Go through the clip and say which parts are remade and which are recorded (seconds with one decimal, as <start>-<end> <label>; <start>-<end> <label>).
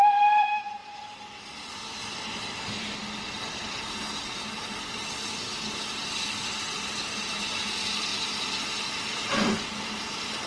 0.0-10.5 recorded